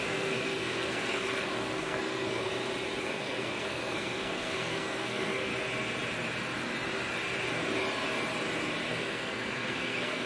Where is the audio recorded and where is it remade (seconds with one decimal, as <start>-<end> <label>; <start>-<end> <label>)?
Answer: 0.0-2.5 remade; 2.5-3.0 recorded; 3.0-5.5 remade; 5.5-8.9 recorded; 8.9-10.3 remade